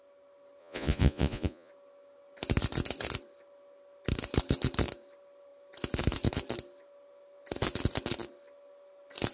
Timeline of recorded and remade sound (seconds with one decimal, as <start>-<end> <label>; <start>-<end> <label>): 0.0-0.6 recorded; 0.6-1.7 remade; 1.7-9.3 recorded